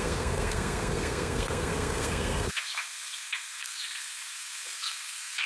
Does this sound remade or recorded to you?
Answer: remade